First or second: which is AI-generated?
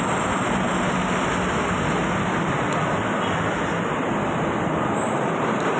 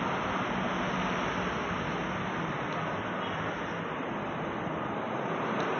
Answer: first